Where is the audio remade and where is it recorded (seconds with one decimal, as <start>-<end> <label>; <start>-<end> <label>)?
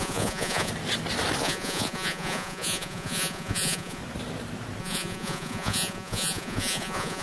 0.0-0.7 remade; 0.7-1.4 recorded; 1.4-4.0 remade; 4.0-4.8 recorded; 4.8-7.2 remade